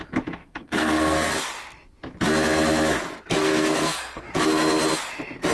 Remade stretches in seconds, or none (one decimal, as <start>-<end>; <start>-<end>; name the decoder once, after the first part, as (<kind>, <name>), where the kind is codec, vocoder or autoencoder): 0.4-1.3 (codec, SNAC); 3.4-4.3